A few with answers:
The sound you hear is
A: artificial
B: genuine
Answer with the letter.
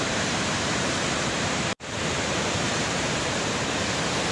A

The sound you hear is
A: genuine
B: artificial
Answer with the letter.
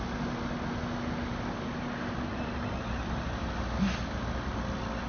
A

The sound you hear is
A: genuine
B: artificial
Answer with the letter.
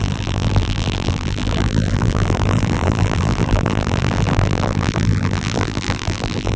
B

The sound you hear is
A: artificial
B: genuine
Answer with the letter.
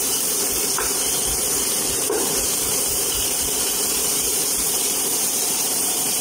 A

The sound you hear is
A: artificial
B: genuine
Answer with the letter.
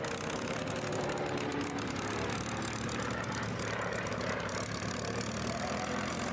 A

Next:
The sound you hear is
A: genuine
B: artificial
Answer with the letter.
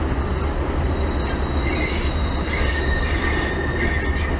A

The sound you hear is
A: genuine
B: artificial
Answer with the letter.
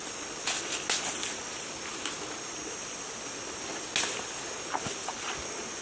A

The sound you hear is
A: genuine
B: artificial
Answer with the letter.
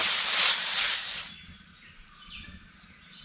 B